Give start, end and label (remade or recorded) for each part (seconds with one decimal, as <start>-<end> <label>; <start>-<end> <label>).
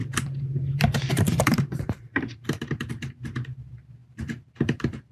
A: 0.0-3.1 remade; 3.1-4.0 recorded; 4.0-5.1 remade